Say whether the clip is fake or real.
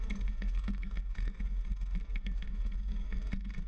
fake